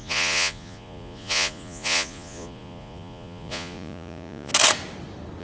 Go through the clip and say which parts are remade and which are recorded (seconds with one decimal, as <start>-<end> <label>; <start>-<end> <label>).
0.0-4.5 remade; 4.5-5.4 recorded

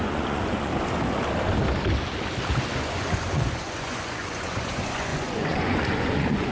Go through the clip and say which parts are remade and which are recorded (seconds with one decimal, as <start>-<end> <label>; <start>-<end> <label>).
0.0-0.7 remade; 0.7-2.8 recorded; 2.8-6.5 remade

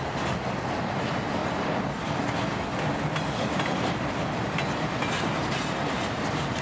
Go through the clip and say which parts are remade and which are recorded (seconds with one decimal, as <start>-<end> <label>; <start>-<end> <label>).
0.0-6.6 recorded

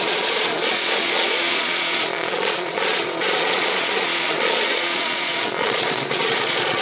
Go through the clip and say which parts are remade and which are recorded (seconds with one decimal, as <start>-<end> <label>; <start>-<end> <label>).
0.0-6.8 remade

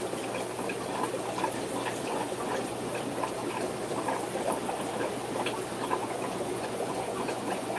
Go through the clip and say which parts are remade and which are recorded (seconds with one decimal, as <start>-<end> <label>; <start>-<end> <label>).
0.0-2.1 recorded; 2.1-2.9 remade; 2.9-6.0 recorded; 6.0-7.8 remade

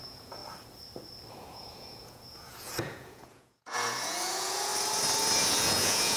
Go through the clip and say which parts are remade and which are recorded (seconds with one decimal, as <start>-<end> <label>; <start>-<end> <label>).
0.0-0.4 remade; 0.4-1.3 recorded; 1.3-4.7 remade; 4.7-5.5 recorded; 5.5-6.2 remade